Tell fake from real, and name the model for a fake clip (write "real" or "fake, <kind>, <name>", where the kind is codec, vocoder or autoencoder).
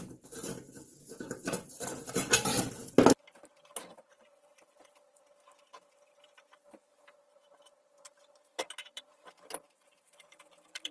fake, vocoder, BigVGAN v2